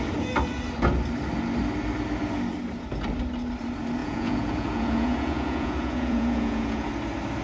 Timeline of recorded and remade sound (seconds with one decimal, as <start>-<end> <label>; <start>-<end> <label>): 0.0-4.0 recorded; 4.0-6.9 remade; 6.9-7.4 recorded